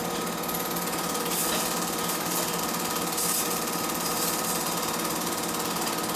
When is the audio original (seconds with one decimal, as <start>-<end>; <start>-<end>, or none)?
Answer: 0.0-6.2